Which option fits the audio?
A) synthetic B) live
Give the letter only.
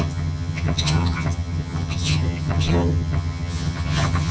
A